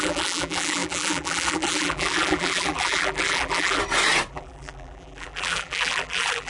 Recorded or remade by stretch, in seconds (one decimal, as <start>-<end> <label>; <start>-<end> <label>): 0.0-3.8 remade; 3.8-4.3 recorded; 4.3-6.5 remade